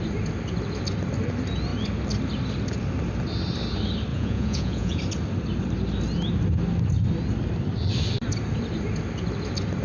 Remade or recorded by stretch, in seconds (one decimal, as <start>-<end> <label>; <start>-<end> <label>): 0.0-4.1 recorded; 4.1-5.0 remade; 5.0-9.8 recorded